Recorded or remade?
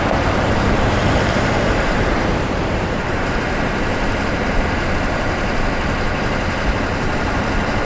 remade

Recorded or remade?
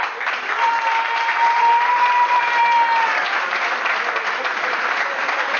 remade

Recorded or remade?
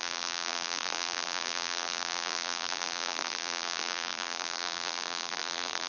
remade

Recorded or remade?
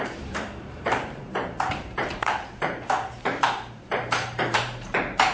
remade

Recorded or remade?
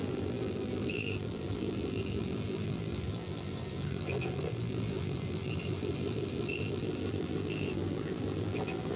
remade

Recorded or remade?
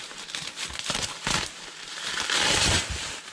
remade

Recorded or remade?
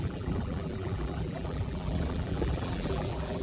remade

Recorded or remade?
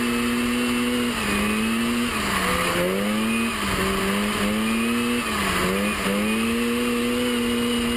recorded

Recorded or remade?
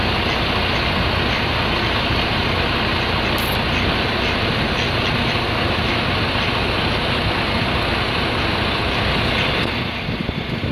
recorded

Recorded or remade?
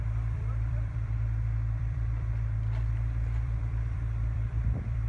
remade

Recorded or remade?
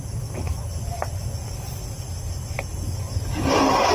recorded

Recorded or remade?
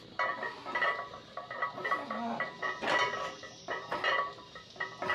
recorded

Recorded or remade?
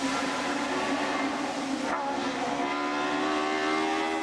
recorded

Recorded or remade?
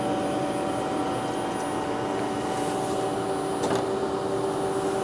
recorded